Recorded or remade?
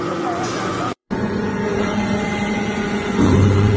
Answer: remade